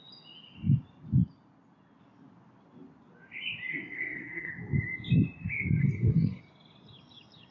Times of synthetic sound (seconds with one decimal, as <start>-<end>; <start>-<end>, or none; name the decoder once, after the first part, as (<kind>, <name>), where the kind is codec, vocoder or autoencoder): 3.7-4.5 (codec, SNAC); 5.8-6.4